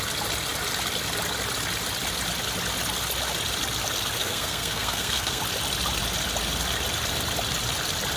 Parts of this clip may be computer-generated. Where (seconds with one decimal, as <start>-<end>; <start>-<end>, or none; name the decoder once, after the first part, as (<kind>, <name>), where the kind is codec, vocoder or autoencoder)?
4.2-5.4 (codec, SNAC)